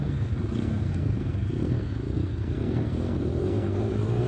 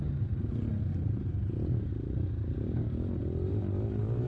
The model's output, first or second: first